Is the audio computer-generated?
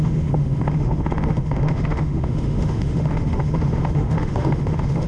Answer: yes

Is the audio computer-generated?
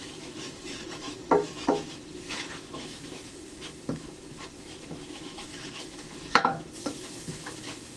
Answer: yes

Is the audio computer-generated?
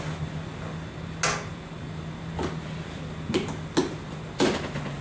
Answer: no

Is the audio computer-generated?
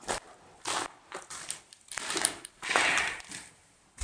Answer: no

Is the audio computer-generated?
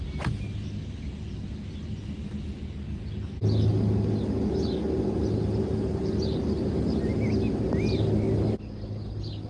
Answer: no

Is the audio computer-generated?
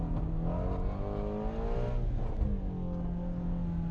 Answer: no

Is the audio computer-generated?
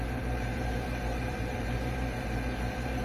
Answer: yes